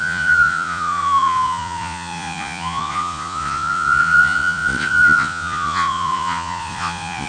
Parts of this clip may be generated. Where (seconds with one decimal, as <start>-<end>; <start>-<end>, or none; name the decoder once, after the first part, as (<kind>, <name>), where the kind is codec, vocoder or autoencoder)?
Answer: 0.0-7.3 (vocoder, Vocos)